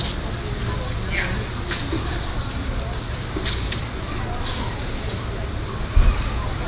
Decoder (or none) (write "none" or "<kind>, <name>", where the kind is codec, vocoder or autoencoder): none